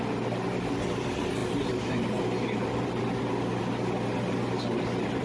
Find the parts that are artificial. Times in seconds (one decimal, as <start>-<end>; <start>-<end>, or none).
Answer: none